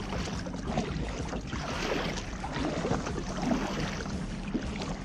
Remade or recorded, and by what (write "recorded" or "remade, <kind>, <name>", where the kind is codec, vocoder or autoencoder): recorded